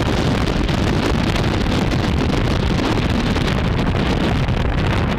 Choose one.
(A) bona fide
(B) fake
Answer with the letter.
A